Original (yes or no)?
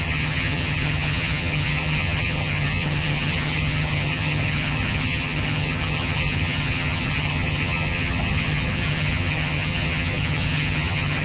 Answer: no